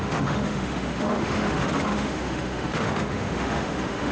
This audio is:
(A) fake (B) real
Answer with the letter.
A